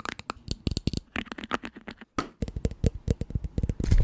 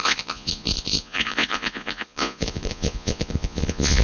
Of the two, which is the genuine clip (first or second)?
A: first